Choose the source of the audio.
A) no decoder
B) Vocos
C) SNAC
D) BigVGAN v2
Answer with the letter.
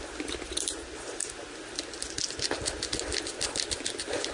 A